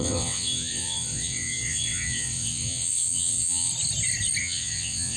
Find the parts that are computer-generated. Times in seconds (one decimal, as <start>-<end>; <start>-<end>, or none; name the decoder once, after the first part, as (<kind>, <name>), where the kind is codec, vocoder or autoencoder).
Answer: 0.0-3.7 (vocoder, WaveNeXt); 4.4-5.2